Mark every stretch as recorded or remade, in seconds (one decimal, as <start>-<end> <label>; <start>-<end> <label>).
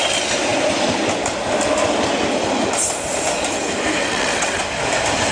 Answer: 0.0-4.0 recorded; 4.0-4.6 remade; 4.6-5.3 recorded